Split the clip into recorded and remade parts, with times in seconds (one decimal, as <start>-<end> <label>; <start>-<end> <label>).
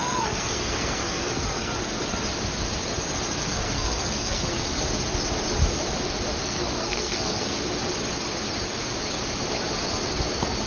0.0-1.7 remade; 1.7-3.4 recorded; 3.4-4.8 remade; 4.8-6.4 recorded; 6.4-7.6 remade; 7.6-10.7 recorded